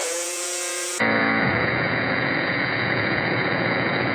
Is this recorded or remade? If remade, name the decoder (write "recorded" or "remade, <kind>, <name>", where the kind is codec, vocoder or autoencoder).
remade, vocoder, Vocos